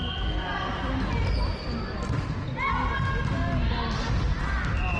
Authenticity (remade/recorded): recorded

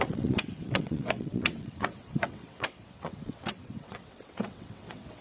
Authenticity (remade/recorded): remade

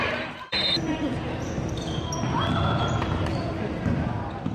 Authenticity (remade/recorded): remade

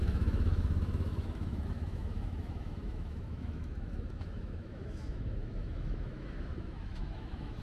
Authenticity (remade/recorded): remade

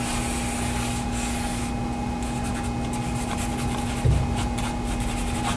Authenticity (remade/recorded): recorded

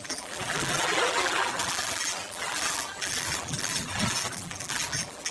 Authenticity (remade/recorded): remade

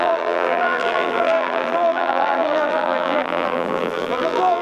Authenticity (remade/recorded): remade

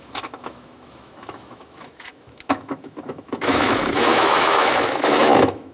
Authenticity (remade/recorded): remade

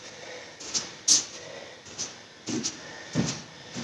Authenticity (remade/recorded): recorded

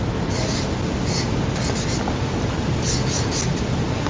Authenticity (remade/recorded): recorded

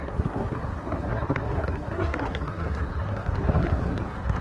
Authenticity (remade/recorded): remade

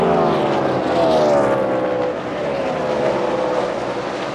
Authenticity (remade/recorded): recorded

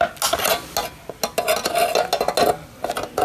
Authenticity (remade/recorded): recorded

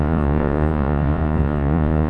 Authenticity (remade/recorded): remade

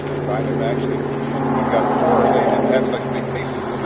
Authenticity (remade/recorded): recorded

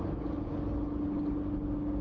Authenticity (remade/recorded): recorded